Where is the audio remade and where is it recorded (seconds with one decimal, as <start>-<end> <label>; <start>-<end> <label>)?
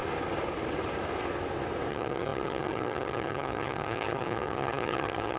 0.0-1.9 recorded; 1.9-5.4 remade